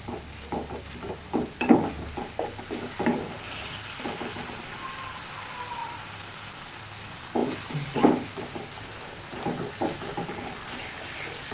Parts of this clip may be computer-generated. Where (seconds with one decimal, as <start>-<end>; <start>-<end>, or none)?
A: 3.1-4.9; 5.8-6.4; 7.4-9.2